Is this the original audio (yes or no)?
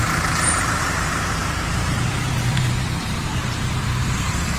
no